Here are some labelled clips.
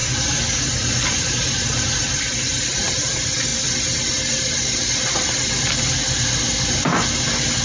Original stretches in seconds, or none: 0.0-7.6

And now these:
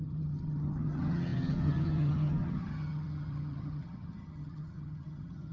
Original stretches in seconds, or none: none